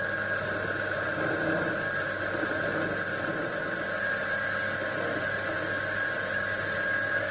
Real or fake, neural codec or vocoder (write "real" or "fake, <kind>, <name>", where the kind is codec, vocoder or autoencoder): real